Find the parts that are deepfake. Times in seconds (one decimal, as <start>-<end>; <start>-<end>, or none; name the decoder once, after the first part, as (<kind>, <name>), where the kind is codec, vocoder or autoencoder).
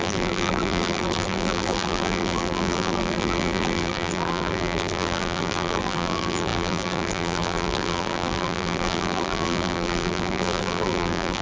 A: 0.0-11.4 (vocoder, BigVGAN v2)